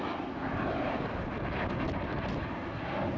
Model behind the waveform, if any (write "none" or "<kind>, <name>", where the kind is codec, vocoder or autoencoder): none